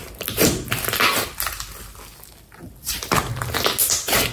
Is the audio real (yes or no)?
yes